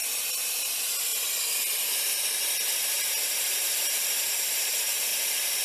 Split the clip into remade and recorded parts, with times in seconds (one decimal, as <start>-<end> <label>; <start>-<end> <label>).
0.0-1.1 remade; 1.1-2.7 recorded; 2.7-5.1 remade; 5.1-5.6 recorded